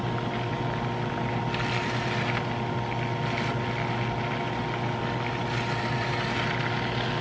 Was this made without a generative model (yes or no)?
yes